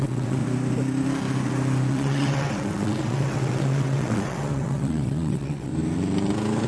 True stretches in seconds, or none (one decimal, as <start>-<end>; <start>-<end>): 0.4-1.9; 5.7-6.7